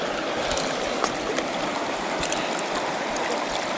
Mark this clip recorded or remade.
recorded